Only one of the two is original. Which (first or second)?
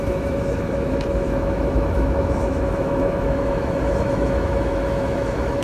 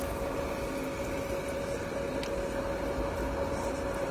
second